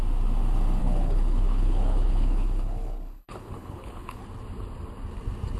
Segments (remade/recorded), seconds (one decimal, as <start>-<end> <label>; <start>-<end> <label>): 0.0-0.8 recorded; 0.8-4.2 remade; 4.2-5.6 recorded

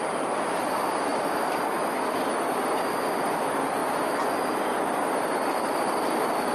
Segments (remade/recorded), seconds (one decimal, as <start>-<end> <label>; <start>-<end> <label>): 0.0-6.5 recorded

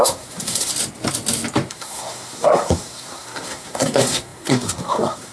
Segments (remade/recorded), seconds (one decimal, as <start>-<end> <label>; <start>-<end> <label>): 0.0-0.7 remade; 0.7-1.7 recorded; 1.7-5.3 remade

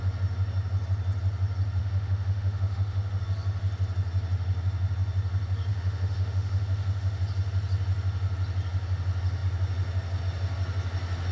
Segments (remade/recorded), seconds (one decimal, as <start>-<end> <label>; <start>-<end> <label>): 0.0-1.8 recorded; 1.8-3.2 remade; 3.2-5.7 recorded; 5.7-7.2 remade; 7.2-11.3 recorded

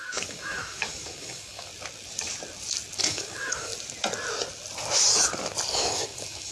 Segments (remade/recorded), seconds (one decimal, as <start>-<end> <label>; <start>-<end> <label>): 0.0-1.7 remade; 1.7-3.0 recorded; 3.0-3.7 remade; 3.7-5.7 recorded; 5.7-6.5 remade